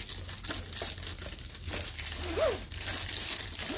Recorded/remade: recorded